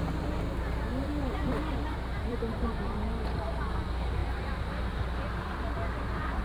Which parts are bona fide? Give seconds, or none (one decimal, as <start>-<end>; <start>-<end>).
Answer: 0.0-0.9; 2.7-4.2

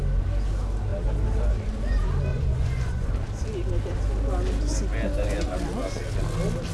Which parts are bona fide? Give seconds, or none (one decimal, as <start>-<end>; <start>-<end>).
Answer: 0.0-2.3; 3.1-6.7

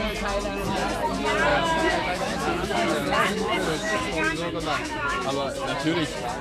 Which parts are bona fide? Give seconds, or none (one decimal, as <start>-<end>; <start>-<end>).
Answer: 0.0-1.5; 5.3-6.4

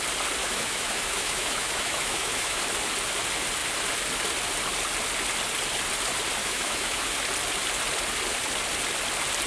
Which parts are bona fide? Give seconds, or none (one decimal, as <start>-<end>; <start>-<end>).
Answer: 0.0-0.4; 2.6-6.4; 7.1-9.5

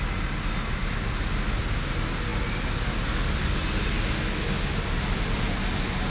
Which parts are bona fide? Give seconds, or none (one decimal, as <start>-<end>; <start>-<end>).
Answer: 0.0-6.1